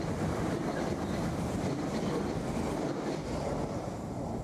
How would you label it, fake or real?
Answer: real